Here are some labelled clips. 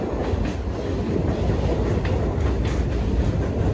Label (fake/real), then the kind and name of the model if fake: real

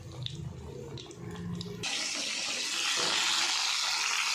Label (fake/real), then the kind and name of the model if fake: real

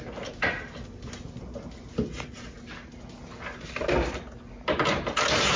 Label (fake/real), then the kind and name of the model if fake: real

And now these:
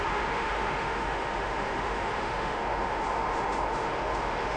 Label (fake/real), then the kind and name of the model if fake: fake, autoencoder, DAC-VAE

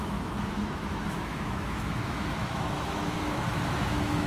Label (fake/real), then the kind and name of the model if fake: fake, autoencoder, DAC-VAE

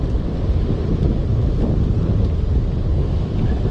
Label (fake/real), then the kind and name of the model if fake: real